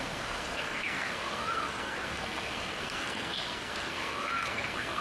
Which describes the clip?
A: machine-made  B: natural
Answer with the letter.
A